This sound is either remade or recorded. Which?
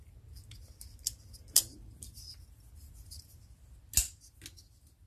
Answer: recorded